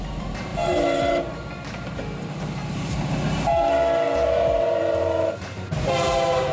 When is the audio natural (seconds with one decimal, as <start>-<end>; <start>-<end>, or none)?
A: none